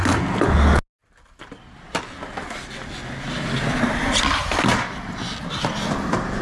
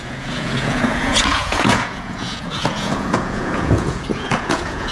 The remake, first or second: second